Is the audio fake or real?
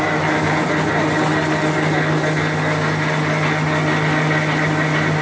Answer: real